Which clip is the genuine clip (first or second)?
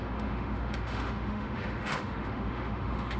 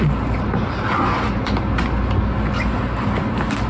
second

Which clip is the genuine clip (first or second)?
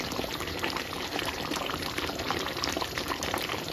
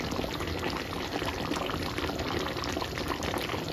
second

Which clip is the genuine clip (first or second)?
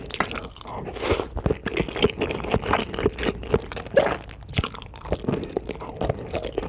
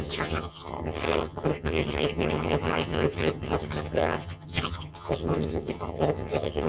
first